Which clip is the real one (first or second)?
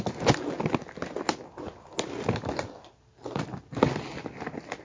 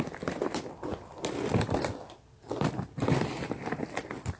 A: first